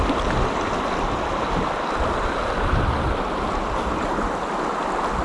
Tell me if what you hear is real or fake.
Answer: real